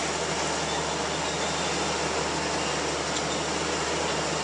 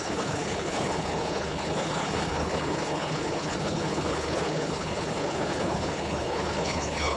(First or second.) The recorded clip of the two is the first